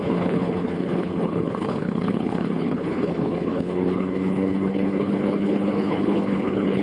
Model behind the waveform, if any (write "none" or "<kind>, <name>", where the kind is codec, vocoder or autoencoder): codec, HILCodec